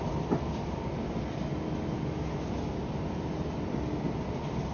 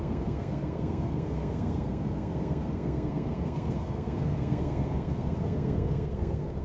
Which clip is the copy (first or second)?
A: second